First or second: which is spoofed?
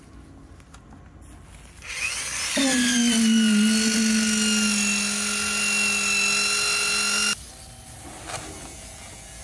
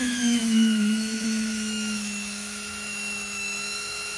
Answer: second